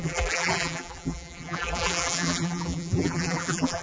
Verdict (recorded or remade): remade